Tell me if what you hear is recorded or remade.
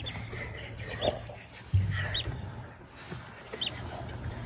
recorded